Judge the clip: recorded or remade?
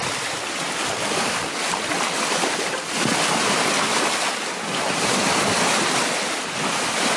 remade